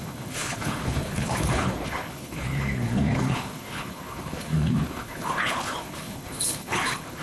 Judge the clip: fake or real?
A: fake